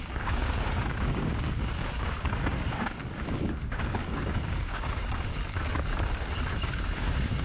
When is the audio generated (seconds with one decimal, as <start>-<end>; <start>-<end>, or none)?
0.0-5.3; 6.6-7.4